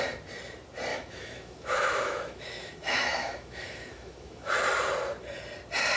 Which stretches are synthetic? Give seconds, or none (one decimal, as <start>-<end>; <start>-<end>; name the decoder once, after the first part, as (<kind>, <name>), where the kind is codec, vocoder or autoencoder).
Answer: 0.9-4.5 (autoencoder, DAC-VAE)